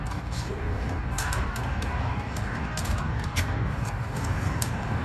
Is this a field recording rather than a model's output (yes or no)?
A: no